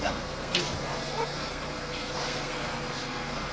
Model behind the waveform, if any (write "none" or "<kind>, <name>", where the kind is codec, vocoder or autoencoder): codec, SNAC